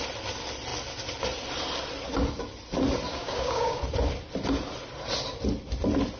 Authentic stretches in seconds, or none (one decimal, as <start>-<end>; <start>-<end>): 0.0-3.1; 3.8-6.2